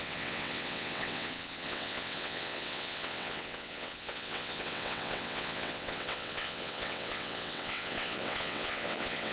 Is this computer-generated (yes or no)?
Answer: yes